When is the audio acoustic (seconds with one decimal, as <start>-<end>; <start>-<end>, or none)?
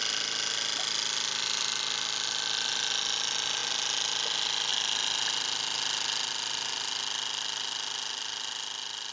0.0-9.1